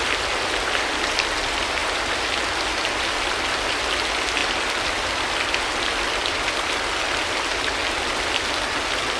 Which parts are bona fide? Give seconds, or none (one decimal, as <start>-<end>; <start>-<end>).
0.0-9.2